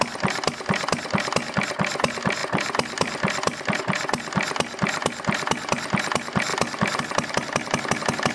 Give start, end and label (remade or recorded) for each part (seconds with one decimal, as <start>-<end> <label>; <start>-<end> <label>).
0.0-2.4 recorded; 2.4-3.8 remade; 3.8-6.5 recorded; 6.5-7.0 remade; 7.0-8.3 recorded